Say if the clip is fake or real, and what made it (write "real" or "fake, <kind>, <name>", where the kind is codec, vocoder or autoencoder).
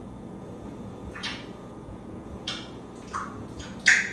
fake, vocoder, Vocos